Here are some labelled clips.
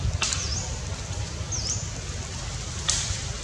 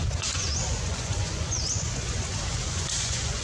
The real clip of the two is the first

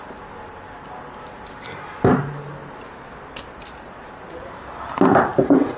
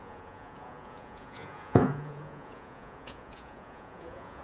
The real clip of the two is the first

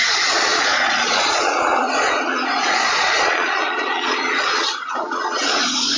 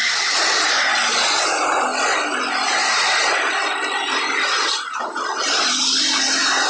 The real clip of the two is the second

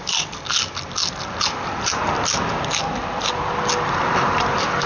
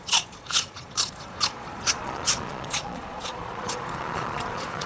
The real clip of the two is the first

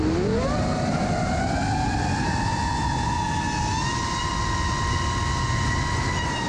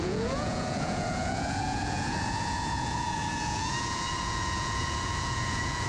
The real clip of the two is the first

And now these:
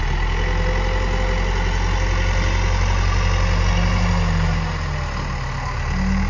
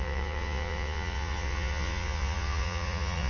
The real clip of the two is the first